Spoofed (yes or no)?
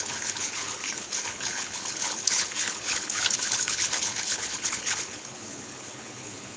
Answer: yes